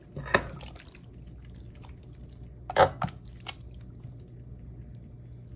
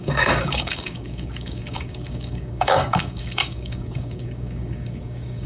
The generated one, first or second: second